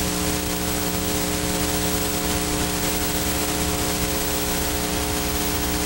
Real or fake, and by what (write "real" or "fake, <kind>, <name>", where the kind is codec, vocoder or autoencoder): real